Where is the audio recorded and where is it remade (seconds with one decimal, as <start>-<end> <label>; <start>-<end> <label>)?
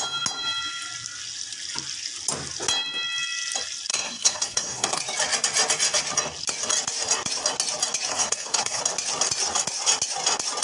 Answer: 0.0-3.9 recorded; 3.9-5.0 remade; 5.0-8.1 recorded; 8.1-8.8 remade; 8.8-10.6 recorded